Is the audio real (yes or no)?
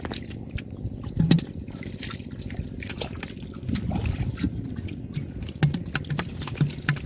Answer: yes